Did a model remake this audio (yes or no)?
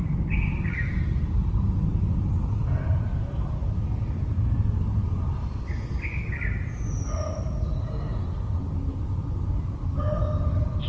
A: no